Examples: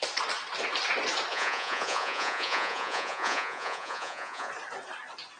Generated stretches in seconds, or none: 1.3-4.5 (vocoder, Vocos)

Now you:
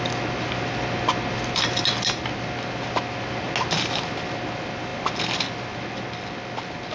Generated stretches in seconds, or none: none

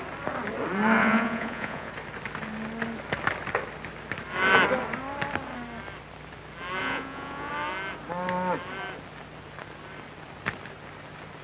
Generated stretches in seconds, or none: 1.0-1.9 (vocoder, Vocos); 6.8-7.5

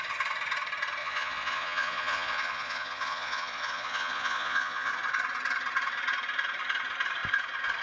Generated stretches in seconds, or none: 1.0-4.9 (vocoder, Vocos)